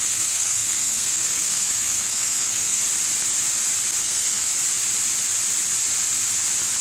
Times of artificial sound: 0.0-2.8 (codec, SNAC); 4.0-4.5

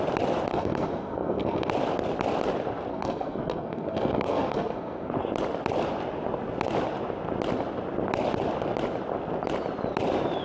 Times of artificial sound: 0.5-1.7 (codec, SNAC); 2.9-5.1

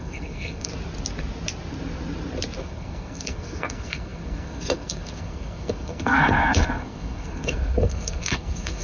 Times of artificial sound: 0.0-0.7 (codec, SNAC); 2.6-8.8

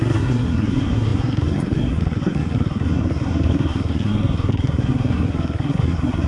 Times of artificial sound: 0.0-6.3 (codec, SNAC)

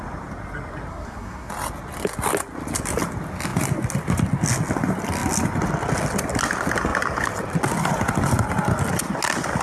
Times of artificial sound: 0.9-1.5 (codec, SNAC)

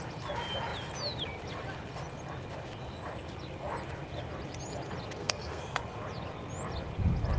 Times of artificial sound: 5.2-5.8 (codec, SNAC)

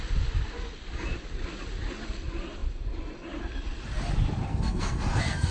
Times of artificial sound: 4.5-5.5 (codec, SNAC)